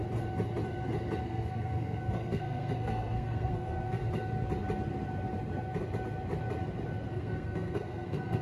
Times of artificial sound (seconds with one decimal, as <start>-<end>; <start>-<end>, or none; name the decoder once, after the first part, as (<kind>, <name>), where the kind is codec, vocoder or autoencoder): 1.2-4.0 (codec, SNAC); 7.1-8.4